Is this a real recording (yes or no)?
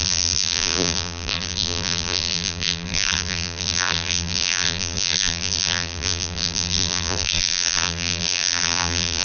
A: no